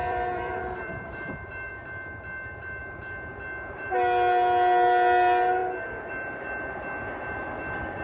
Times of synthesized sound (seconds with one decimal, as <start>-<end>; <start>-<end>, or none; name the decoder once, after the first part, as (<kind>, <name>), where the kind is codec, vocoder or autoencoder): 0.0-1.7 (vocoder, BigVGAN v2)